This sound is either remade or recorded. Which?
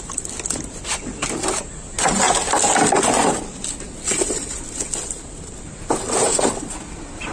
recorded